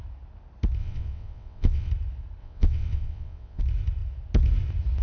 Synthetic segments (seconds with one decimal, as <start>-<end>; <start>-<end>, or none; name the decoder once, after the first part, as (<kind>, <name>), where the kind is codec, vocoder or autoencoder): 0.8-1.9 (vocoder, WaveNeXt); 2.4-3.6